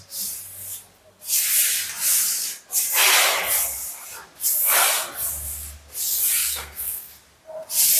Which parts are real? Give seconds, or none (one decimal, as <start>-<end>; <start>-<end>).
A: 0.0-6.4; 7.1-8.0